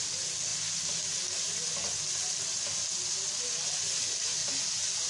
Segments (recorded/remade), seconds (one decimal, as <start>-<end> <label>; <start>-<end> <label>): 0.0-5.1 recorded